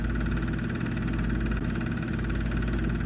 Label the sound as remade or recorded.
recorded